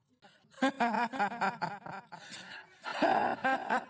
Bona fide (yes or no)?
yes